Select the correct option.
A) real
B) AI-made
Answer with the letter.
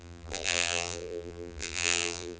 B